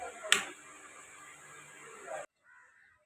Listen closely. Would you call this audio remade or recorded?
recorded